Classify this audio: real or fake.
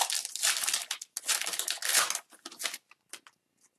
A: real